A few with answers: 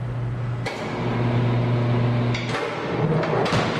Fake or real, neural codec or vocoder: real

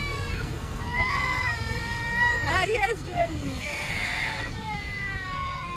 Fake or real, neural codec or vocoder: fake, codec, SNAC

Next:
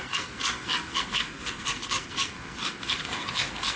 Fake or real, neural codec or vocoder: fake, codec, SNAC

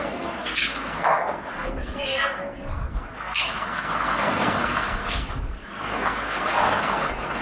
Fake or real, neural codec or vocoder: fake, codec, SNAC